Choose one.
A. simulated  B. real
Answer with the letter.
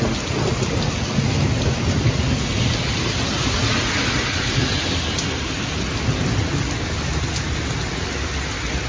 B